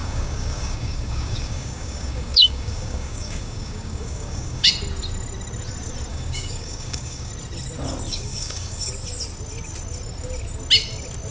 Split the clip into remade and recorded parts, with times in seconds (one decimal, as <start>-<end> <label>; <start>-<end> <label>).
0.0-4.7 remade; 4.7-6.1 recorded; 6.1-7.3 remade; 7.3-8.1 recorded; 8.1-8.9 remade; 8.9-11.3 recorded